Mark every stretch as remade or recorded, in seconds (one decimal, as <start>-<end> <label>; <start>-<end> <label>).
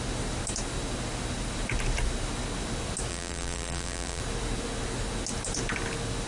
0.0-3.1 recorded; 3.1-4.2 remade; 4.2-6.3 recorded